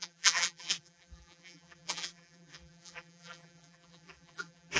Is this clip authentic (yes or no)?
no